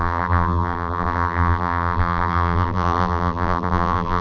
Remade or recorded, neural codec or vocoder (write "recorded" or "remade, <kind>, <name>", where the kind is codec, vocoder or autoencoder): remade, vocoder, BigVGAN v2